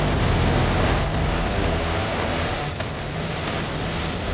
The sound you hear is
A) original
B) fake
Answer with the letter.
A